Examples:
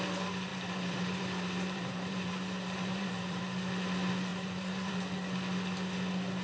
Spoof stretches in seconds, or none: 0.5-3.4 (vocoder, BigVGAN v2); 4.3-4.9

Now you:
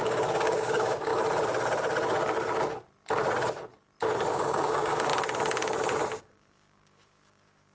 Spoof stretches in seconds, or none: 0.0-1.1 (codec, DAC); 4.3-5.1; 6.2-7.7

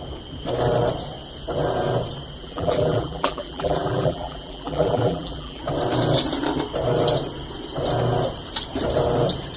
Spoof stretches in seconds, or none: 2.4-5.6 (vocoder, BigVGAN v2)

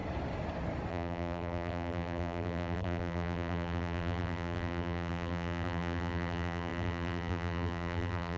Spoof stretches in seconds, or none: 0.9-8.4 (vocoder, BigVGAN v2)